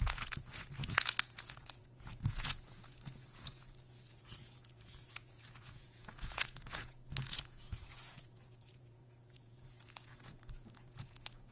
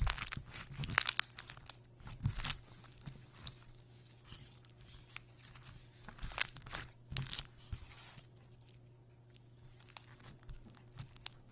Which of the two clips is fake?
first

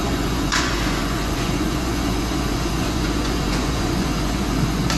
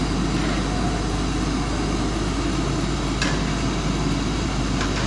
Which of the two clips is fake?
first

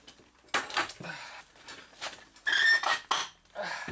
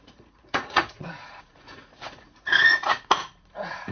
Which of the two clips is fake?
second